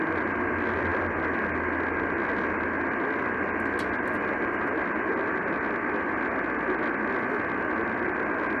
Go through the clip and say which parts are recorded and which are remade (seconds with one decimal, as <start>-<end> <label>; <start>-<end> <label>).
0.0-8.6 recorded